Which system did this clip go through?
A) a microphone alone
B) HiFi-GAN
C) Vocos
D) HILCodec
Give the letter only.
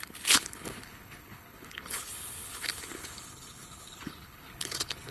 D